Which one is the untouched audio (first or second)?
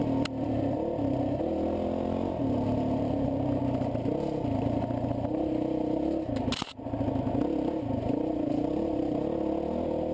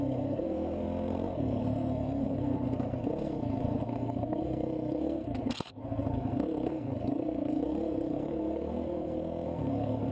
first